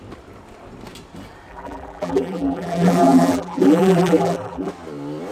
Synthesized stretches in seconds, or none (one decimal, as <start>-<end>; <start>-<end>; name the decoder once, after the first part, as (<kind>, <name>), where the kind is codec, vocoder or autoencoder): 1.5-4.7 (vocoder, BigVGAN v2)